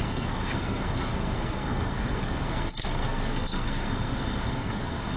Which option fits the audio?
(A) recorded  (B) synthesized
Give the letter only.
B